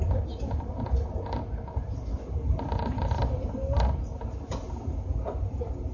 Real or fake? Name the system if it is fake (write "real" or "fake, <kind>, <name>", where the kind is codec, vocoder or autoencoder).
real